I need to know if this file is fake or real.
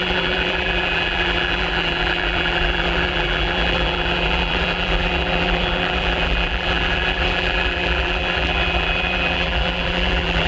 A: fake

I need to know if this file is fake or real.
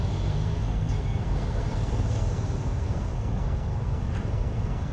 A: fake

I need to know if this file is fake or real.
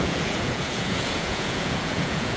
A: fake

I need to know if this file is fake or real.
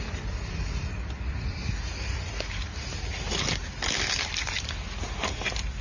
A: real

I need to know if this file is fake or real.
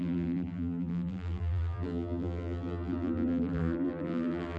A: fake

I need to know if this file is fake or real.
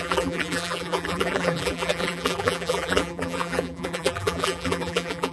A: fake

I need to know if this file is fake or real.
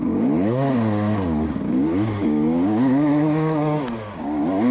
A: fake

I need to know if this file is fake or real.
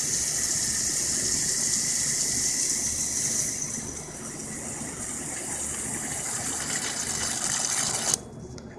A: real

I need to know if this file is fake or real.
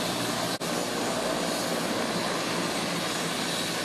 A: real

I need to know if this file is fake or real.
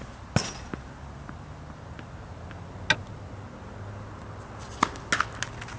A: real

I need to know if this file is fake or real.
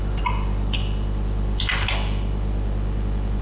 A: real